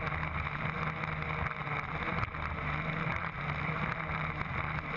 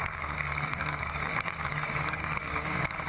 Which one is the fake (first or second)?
second